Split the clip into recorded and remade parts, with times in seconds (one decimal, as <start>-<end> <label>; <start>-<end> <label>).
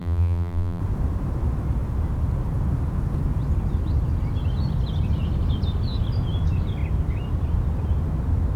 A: 0.0-0.8 remade; 0.8-8.6 recorded